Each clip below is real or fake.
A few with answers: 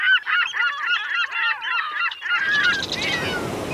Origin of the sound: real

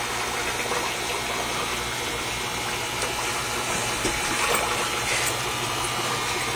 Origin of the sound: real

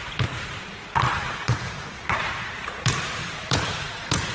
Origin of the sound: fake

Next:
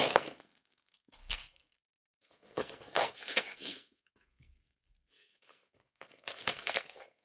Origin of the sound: fake